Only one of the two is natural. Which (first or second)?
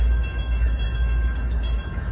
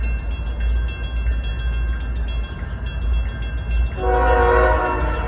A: second